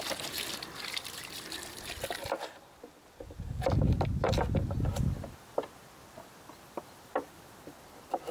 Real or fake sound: fake